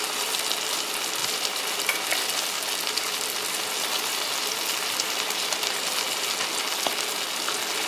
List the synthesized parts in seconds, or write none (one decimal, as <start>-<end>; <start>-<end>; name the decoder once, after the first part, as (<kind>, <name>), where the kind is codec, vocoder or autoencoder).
1.2-2.1 (vocoder, BigVGAN v2)